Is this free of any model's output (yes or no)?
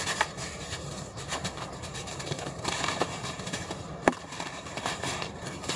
no